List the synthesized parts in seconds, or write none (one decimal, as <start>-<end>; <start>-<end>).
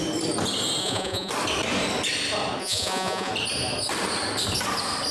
0.8-1.3; 2.6-3.3